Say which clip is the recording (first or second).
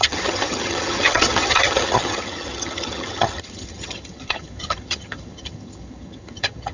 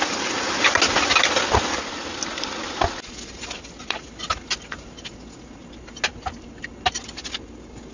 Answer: second